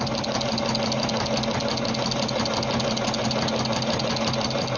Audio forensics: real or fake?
real